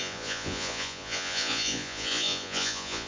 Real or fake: fake